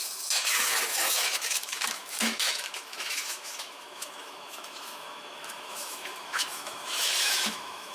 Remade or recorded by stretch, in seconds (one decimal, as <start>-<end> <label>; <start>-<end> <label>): 0.0-7.9 remade